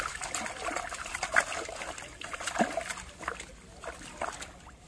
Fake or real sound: real